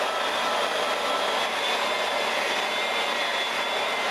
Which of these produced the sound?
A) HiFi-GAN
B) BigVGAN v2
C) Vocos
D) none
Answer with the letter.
D